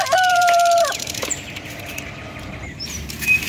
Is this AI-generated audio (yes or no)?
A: yes